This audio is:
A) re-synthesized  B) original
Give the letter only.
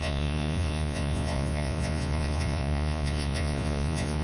A